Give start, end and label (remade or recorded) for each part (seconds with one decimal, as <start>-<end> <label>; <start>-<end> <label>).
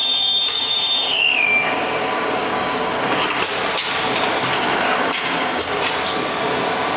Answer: 0.0-3.4 remade; 3.4-4.5 recorded; 4.5-5.8 remade; 5.8-7.0 recorded